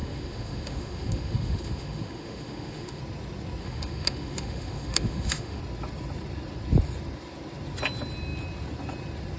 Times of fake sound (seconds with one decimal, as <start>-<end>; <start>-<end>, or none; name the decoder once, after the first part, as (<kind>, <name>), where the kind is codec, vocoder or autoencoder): 0.0-3.0 (autoencoder, DAC-VAE); 3.6-5.6